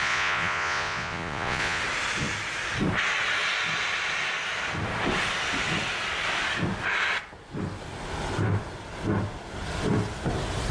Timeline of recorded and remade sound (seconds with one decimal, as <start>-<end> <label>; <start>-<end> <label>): 0.0-1.8 remade; 1.8-10.7 recorded